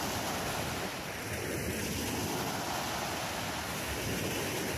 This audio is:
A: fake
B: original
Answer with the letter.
B